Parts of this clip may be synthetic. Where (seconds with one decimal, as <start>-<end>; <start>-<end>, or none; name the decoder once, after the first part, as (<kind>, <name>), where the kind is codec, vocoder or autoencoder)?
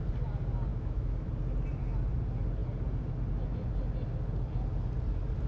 0.7-1.3 (autoencoder, DAC-VAE)